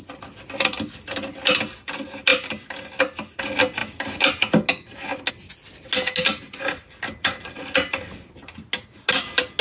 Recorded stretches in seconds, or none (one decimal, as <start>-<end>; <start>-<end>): 0.0-9.6